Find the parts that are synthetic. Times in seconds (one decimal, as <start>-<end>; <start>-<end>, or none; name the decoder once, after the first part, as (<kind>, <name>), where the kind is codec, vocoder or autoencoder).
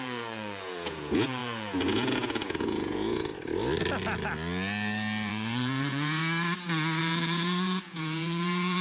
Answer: 0.0-3.3 (vocoder, Vocos); 5.3-6.2; 7.0-8.8